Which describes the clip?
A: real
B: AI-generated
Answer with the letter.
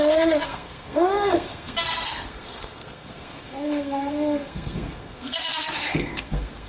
B